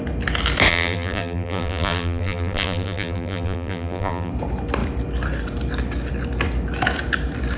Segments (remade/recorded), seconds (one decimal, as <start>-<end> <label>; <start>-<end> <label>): 0.0-0.7 recorded; 0.7-4.3 remade; 4.3-7.6 recorded